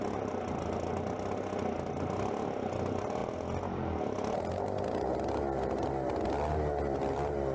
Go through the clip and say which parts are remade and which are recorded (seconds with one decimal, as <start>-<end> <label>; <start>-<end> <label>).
0.0-7.5 recorded